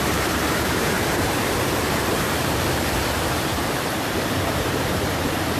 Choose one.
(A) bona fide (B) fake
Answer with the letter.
B